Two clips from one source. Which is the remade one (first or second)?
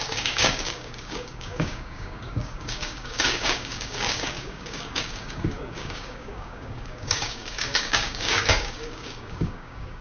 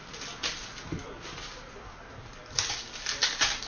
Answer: first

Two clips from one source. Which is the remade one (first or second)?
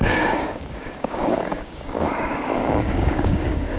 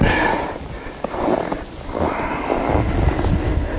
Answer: first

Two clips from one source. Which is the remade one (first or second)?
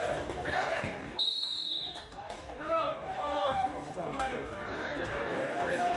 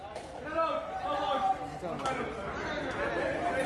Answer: first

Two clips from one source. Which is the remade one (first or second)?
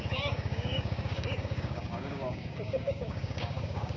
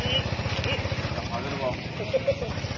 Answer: first